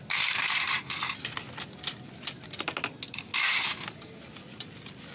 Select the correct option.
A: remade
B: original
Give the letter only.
B